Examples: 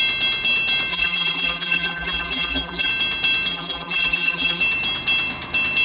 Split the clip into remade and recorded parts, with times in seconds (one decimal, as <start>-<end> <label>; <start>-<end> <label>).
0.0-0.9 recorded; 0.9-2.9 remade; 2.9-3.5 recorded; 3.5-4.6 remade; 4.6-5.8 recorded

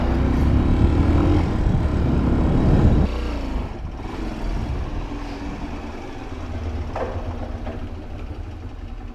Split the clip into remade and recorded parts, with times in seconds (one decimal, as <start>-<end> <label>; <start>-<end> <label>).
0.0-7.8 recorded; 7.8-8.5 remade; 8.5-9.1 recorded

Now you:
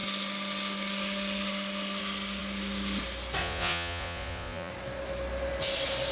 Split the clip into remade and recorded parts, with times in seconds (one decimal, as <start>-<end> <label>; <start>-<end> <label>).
0.0-3.4 recorded; 3.4-4.7 remade; 4.7-6.1 recorded

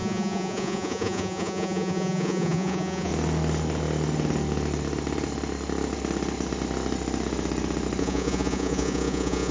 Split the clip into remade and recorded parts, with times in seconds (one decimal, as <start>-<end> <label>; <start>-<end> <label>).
0.0-3.1 remade; 3.1-8.0 recorded; 8.0-9.5 remade

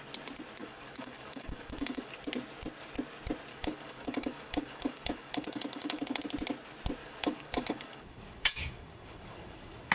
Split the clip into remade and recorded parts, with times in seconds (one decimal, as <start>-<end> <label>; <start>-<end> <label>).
0.0-0.6 recorded; 0.6-2.1 remade; 2.1-3.5 recorded; 3.5-6.2 remade; 6.2-7.0 recorded; 7.0-9.9 remade